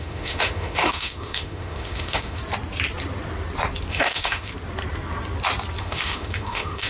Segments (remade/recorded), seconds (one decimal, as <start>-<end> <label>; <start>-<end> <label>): 0.0-2.4 remade; 2.4-3.9 recorded; 3.9-4.5 remade; 4.5-5.8 recorded; 5.8-6.9 remade